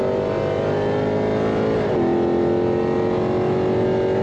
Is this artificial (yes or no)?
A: no